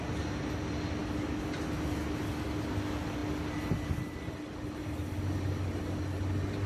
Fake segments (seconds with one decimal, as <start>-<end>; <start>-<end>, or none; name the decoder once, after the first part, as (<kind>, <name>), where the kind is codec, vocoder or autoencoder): none